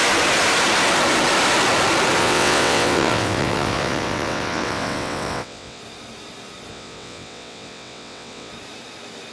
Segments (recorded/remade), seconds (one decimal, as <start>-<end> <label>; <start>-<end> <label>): 0.0-2.2 recorded; 2.2-5.8 remade; 5.8-6.7 recorded; 6.7-8.5 remade; 8.5-9.3 recorded